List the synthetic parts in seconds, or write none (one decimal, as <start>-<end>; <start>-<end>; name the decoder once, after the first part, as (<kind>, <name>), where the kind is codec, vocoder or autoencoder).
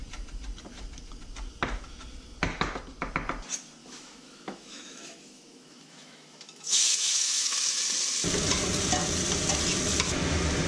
3.8-7.8 (autoencoder, DAC-VAE)